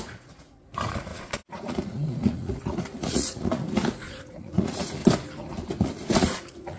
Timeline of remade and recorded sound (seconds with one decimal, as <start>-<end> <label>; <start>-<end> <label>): 0.0-5.0 remade; 5.0-5.8 recorded; 5.8-6.8 remade